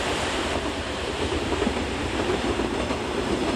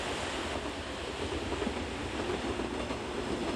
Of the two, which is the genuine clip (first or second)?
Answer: second